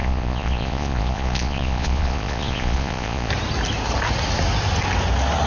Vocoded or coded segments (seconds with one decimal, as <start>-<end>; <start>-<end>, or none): 0.0-3.3